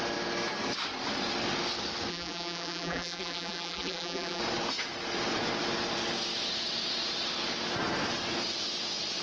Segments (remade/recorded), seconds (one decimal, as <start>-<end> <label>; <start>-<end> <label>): 0.0-2.1 recorded; 2.1-4.4 remade; 4.4-9.2 recorded